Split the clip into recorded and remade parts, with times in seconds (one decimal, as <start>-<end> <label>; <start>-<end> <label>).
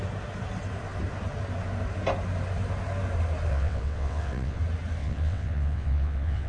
0.0-3.5 recorded; 3.5-4.6 remade; 4.6-5.0 recorded; 5.0-6.5 remade